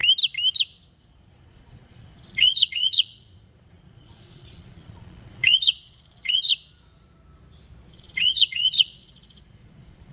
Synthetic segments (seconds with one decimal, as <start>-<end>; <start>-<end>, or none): 1.0-6.5; 7.9-10.1